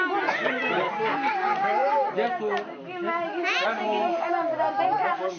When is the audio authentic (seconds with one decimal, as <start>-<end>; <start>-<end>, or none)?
0.0-0.6; 1.3-5.4